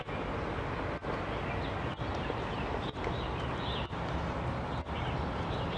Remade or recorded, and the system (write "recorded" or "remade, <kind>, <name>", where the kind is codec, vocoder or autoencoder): recorded